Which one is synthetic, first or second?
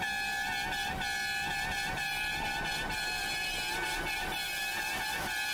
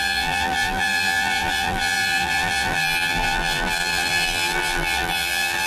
second